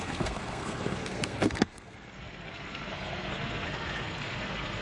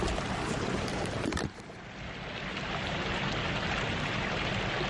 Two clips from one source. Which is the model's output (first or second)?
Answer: first